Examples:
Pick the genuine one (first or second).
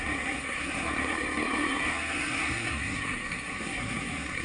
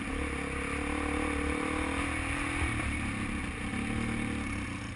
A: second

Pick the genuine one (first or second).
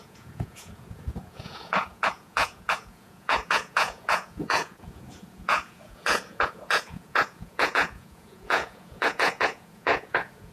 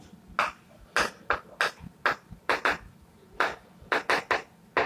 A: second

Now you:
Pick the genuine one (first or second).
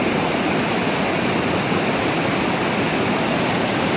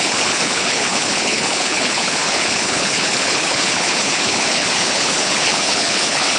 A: first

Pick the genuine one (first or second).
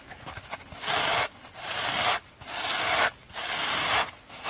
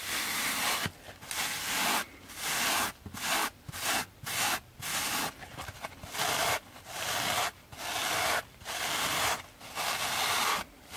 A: first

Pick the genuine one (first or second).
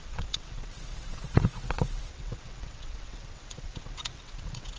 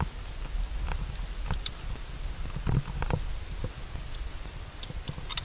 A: second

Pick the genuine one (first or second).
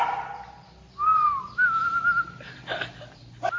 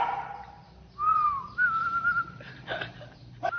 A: first